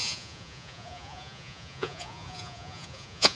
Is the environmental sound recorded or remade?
remade